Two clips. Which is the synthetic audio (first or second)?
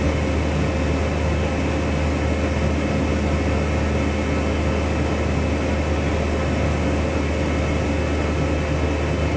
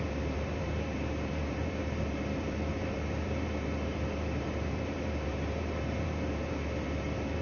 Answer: second